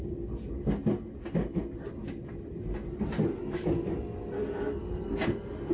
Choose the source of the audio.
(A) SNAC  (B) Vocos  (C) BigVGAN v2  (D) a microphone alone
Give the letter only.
D